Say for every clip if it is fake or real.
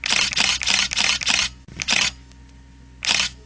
real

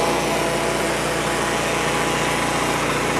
real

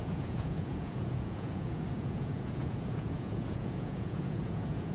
fake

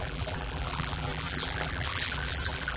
fake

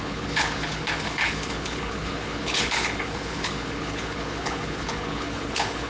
fake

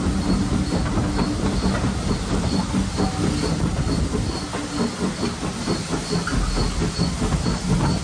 real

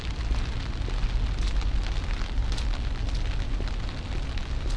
real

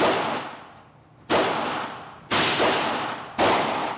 real